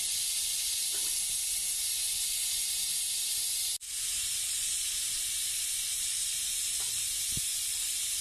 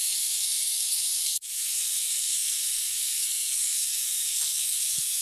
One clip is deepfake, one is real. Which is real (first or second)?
first